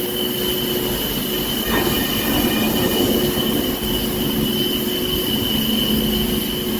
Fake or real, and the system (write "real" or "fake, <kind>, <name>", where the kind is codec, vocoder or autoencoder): real